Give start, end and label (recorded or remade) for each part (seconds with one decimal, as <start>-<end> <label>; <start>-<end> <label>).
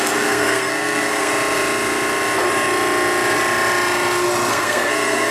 0.0-1.3 remade; 1.3-4.5 recorded; 4.5-5.3 remade